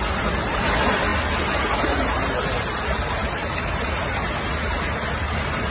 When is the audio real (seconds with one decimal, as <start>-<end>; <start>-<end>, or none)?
0.0-5.7